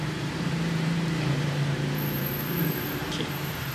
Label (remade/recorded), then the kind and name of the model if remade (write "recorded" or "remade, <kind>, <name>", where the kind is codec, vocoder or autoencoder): remade, vocoder, BigVGAN v2